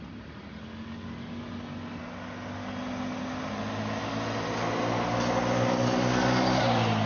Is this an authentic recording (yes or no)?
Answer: yes